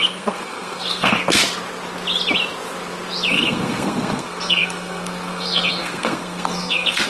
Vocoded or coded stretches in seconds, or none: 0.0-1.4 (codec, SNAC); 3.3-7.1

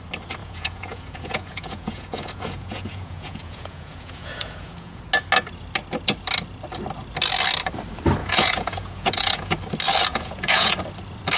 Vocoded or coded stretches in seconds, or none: 0.4-5.0 (vocoder, Vocos); 8.2-9.5; 10.1-10.8

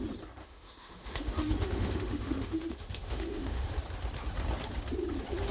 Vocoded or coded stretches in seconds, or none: 0.4-3.7 (autoencoder, DAC-VAE)

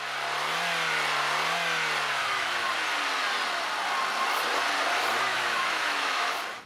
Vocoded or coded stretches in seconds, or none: 2.2-2.7 (autoencoder, DAC-VAE); 5.3-6.3

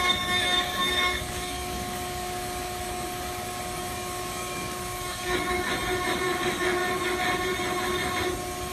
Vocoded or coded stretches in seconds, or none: 0.0-5.7 (codec, DAC); 6.2-6.8

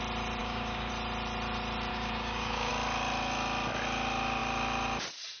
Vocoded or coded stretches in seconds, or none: 0.4-0.9 (codec, DAC); 1.9-2.7

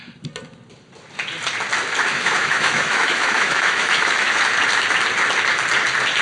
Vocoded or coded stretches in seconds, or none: 2.1-4.4 (autoencoder, DAC-VAE)